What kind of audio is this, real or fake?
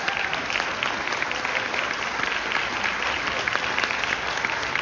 real